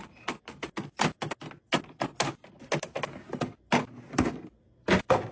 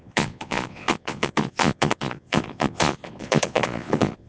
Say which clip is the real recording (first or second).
first